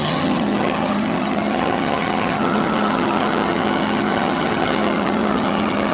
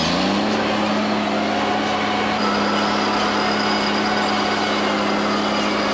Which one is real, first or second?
second